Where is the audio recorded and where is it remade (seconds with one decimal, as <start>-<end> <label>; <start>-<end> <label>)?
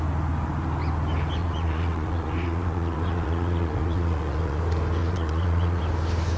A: 0.0-1.4 recorded; 1.4-4.6 remade; 4.6-5.0 recorded; 5.0-5.8 remade; 5.8-6.4 recorded